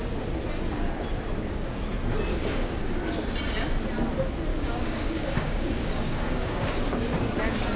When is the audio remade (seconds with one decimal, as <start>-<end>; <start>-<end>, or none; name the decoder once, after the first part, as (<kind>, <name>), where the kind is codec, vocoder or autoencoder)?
2.3-2.8 (codec, DAC); 4.5-6.7